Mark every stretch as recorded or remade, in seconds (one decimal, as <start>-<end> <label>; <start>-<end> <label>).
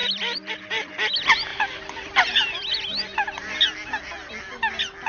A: 0.0-0.5 remade; 0.5-1.5 recorded; 1.5-3.6 remade; 3.6-5.1 recorded